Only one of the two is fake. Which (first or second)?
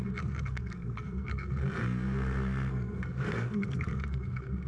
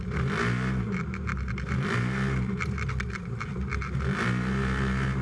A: first